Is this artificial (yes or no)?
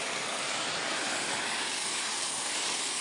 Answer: yes